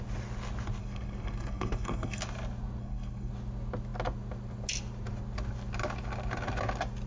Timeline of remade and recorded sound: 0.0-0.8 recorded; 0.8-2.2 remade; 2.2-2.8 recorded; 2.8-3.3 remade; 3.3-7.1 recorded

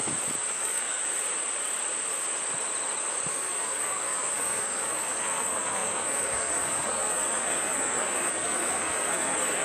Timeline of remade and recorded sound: 0.0-0.5 recorded; 0.5-1.0 remade; 1.0-3.3 recorded; 3.3-9.6 remade

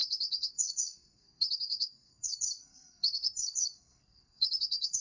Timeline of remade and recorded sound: 0.0-5.0 remade

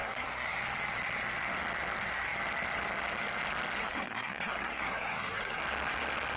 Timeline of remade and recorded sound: 0.0-0.6 remade; 0.6-3.8 recorded; 3.8-5.6 remade; 5.6-6.4 recorded

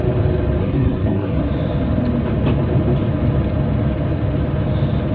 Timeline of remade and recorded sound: 0.0-0.6 recorded; 0.6-1.4 remade; 1.4-5.1 recorded